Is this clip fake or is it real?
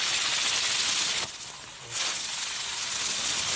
real